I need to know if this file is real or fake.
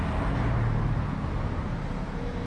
real